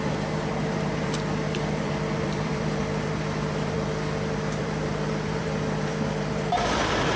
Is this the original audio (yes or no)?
no